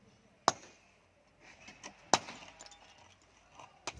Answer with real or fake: real